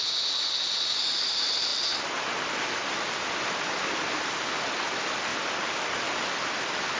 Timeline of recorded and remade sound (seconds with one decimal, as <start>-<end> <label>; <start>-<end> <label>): 0.0-1.7 remade; 1.7-2.6 recorded; 2.6-5.3 remade; 5.3-6.2 recorded; 6.2-7.0 remade